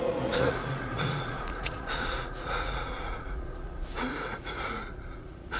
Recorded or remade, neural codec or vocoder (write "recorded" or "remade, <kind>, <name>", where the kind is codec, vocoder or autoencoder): remade, vocoder, Vocos